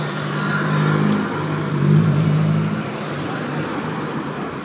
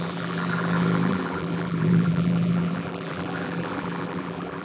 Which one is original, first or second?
first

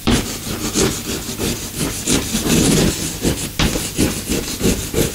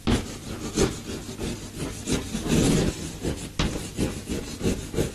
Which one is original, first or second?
second